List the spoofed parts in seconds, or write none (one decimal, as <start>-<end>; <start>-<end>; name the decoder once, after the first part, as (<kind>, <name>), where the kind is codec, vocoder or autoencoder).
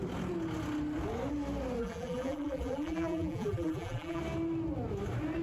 1.8-4.2 (vocoder, BigVGAN v2)